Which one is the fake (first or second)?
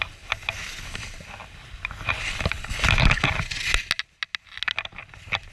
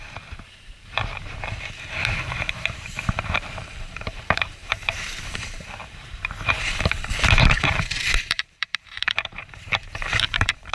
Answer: second